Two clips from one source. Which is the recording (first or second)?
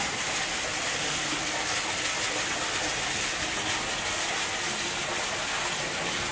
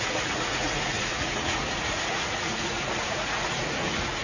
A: first